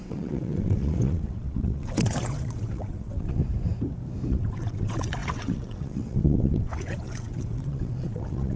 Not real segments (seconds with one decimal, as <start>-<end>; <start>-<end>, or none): 0.0-3.4; 4.3-8.6

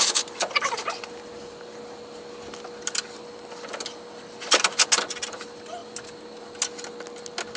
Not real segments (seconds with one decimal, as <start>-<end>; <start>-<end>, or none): none

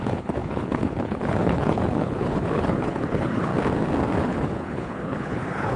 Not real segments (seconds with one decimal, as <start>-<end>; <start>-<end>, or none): 0.0-3.5; 4.2-5.8

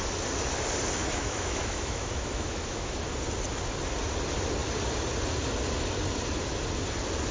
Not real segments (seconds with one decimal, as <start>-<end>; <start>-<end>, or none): 1.0-3.0

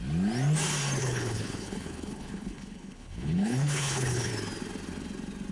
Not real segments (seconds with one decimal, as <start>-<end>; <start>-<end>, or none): 1.0-4.3